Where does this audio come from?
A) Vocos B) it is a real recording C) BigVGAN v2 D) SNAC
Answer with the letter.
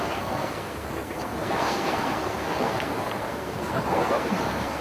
D